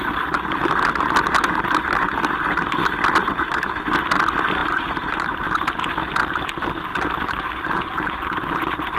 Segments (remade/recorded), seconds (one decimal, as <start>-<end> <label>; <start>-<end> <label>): 0.0-3.2 recorded; 3.2-3.8 remade; 3.8-4.6 recorded; 4.6-5.4 remade; 5.4-6.9 recorded; 6.9-8.6 remade; 8.6-9.0 recorded